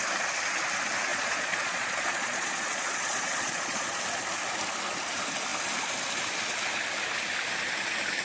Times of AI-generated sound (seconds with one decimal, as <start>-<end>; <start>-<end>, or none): 1.1-4.0